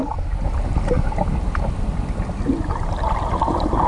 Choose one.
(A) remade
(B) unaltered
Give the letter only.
B